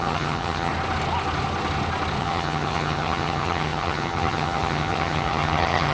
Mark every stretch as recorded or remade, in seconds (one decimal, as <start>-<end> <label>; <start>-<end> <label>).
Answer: 0.0-0.7 remade; 0.7-2.2 recorded; 2.2-5.9 remade